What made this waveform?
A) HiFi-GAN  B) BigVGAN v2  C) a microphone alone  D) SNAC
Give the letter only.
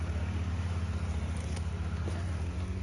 C